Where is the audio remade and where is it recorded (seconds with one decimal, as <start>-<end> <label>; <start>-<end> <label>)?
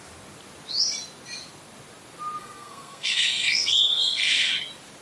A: 0.0-2.4 recorded; 2.4-4.5 remade; 4.5-5.0 recorded